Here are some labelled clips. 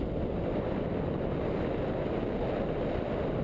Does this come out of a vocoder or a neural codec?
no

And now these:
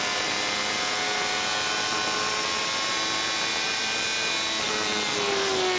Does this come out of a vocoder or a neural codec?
no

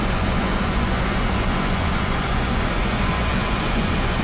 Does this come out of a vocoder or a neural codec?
yes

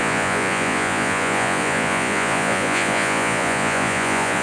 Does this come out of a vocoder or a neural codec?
yes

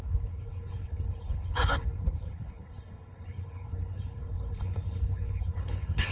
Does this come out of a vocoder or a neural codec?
yes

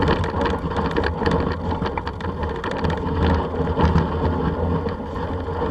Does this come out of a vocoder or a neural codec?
no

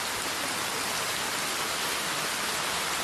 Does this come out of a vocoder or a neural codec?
no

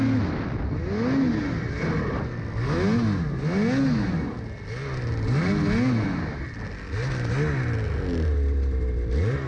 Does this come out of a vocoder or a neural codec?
no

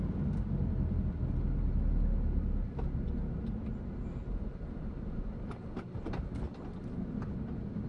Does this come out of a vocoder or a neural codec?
no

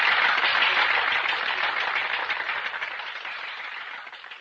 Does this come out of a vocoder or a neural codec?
no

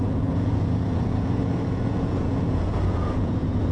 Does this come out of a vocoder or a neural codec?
yes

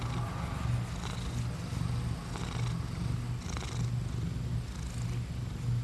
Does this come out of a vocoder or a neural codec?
no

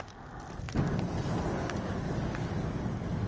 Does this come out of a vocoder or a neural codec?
no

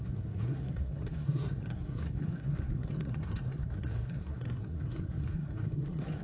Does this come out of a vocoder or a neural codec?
yes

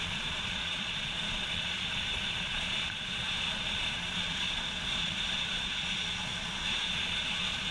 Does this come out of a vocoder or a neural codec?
yes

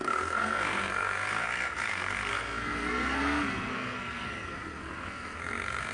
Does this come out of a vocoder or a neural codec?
yes